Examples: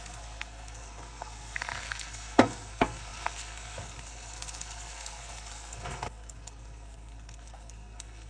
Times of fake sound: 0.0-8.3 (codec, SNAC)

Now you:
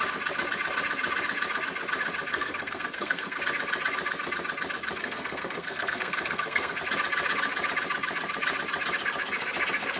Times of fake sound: 2.3-3.4 (codec, SNAC); 5.0-6.8

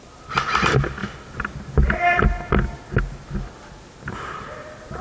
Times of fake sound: none